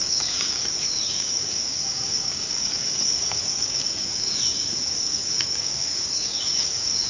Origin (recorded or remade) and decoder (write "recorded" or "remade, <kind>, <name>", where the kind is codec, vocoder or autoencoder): remade, codec, DAC